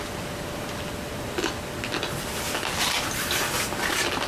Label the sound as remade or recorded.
recorded